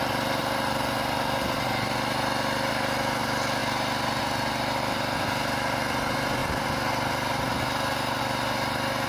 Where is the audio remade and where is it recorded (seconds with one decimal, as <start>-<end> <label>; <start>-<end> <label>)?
0.0-9.1 recorded